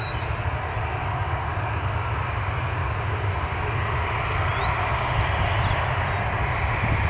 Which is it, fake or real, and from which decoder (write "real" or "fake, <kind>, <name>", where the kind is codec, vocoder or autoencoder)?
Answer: real